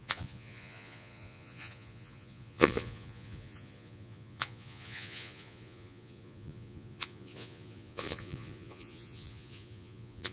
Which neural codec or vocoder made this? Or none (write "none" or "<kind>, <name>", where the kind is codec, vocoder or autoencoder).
vocoder, Vocos